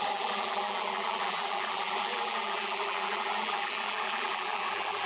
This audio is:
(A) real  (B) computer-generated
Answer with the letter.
B